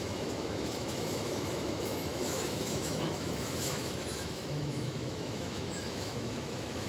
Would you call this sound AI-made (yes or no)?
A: yes